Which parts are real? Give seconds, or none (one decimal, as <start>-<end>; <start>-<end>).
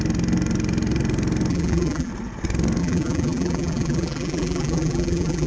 0.0-1.5; 2.1-2.8